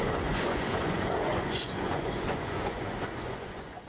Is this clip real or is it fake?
fake